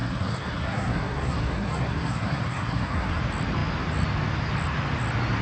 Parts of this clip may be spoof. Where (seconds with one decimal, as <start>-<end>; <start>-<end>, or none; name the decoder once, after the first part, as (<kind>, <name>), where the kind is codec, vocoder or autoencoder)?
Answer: 0.0-3.2 (codec, SNAC)